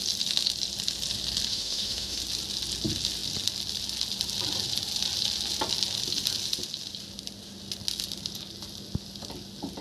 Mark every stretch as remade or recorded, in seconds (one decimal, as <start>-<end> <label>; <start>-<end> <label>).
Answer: 0.0-1.5 recorded; 1.5-2.2 remade; 2.2-9.8 recorded